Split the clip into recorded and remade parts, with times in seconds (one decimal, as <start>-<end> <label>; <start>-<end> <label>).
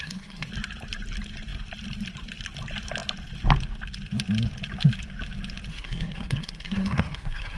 0.0-0.5 remade; 0.5-5.7 recorded; 5.7-7.6 remade